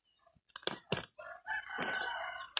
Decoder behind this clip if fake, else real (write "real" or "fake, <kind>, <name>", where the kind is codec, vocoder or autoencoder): real